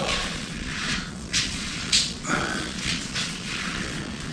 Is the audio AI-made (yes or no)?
yes